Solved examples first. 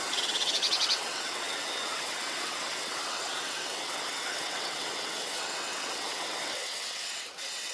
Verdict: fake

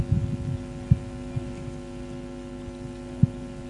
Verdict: real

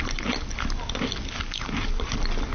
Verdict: real